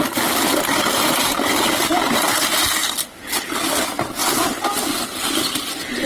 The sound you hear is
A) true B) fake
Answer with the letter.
A